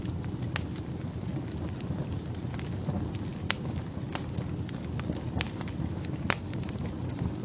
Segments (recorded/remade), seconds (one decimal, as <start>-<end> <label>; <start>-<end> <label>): 0.0-7.4 recorded